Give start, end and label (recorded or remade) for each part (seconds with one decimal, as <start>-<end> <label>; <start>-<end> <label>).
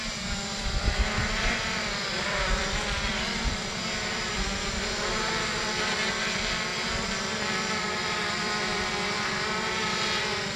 0.0-1.2 recorded; 1.2-5.9 remade; 5.9-6.7 recorded; 6.7-10.2 remade; 10.2-10.6 recorded